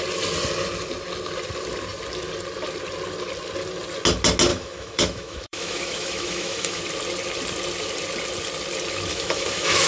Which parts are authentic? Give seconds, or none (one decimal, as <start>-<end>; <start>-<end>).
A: 0.0-4.5; 6.8-9.1